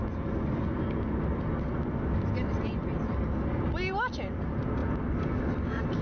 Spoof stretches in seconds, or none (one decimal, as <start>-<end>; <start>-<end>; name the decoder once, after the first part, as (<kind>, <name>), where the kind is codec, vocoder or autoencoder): none